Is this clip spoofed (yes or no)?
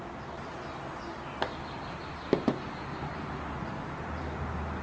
no